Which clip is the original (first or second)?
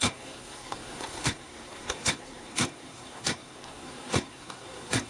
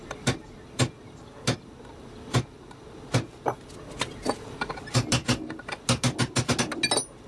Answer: second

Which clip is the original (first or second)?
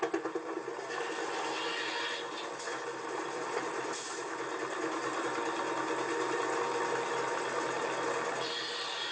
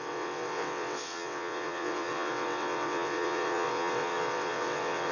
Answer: first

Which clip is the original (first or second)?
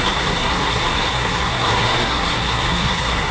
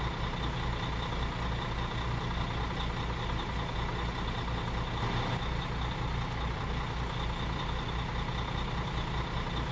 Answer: second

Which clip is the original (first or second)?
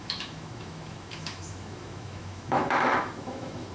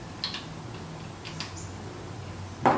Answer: second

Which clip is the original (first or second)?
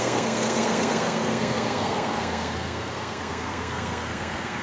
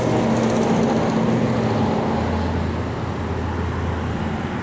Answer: second